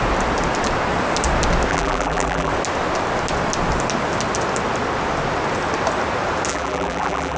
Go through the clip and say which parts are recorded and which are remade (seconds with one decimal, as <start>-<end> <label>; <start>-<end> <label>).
0.0-1.7 recorded; 1.7-2.5 remade; 2.5-6.5 recorded; 6.5-7.4 remade